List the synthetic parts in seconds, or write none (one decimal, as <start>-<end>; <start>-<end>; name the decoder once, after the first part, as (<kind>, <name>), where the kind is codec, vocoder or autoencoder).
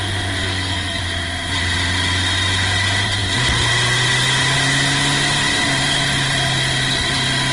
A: 0.4-1.0 (codec, SNAC)